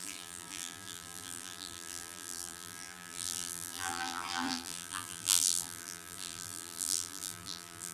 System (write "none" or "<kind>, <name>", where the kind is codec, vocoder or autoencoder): vocoder, BigVGAN v2